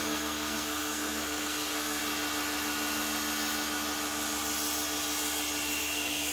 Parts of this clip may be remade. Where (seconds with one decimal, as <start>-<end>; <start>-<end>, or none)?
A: 0.0-2.0; 5.8-6.3